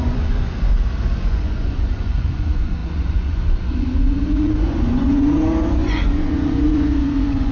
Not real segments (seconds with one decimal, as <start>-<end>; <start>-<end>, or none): 0.0-0.7; 1.2-7.5